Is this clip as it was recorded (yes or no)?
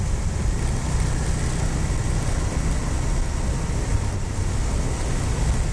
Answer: yes